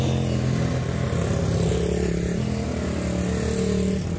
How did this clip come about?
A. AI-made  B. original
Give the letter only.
B